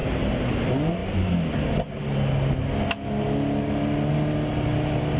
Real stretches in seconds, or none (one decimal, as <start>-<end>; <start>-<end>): 0.0-5.2